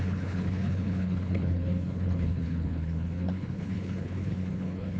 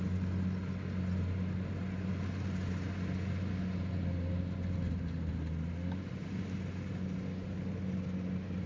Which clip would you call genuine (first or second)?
second